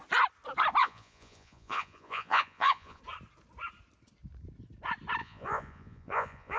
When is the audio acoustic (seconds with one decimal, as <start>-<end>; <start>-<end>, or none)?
0.0-0.8; 3.0-5.2